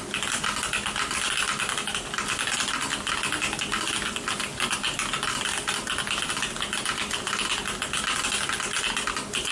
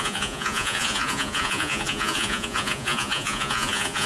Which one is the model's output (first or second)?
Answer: second